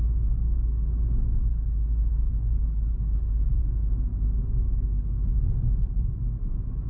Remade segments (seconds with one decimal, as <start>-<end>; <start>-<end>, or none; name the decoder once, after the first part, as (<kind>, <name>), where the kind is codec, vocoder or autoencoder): 1.4-3.6 (codec, HILCodec)